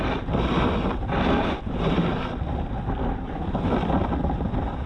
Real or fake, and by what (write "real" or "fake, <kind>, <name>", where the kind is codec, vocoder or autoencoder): real